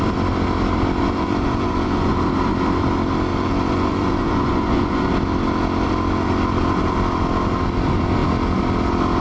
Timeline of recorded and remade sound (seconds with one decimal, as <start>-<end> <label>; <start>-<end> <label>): 0.0-1.0 recorded; 1.0-2.1 remade; 2.1-3.3 recorded; 3.3-5.1 remade; 5.1-9.2 recorded